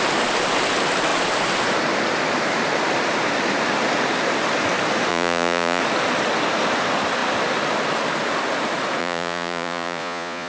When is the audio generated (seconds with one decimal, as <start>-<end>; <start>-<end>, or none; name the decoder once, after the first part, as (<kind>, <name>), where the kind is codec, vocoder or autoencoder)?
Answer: 5.1-5.8 (vocoder, Vocos); 9.0-10.5